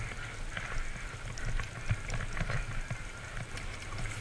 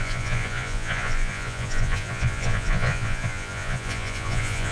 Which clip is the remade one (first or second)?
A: second